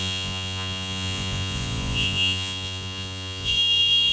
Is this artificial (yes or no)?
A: yes